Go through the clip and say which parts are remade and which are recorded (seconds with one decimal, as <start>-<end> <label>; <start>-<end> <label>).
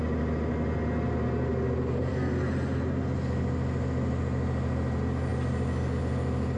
0.0-6.6 recorded